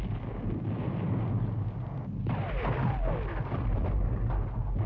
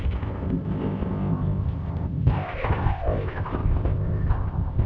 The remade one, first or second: second